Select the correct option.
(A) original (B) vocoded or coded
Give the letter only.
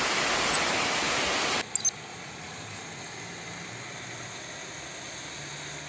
A